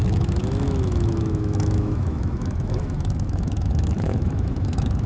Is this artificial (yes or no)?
yes